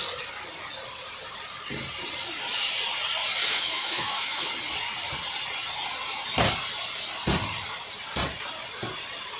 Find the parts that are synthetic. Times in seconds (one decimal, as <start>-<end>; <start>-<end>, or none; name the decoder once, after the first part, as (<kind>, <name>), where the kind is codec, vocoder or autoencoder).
3.5-4.5 (autoencoder, DAC-VAE)